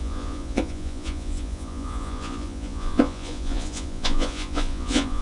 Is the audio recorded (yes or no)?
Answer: no